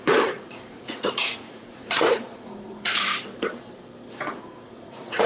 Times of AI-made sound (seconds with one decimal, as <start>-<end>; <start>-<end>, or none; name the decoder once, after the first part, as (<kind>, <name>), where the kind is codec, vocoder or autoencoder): 0.0-2.9 (vocoder, Vocos); 4.4-5.3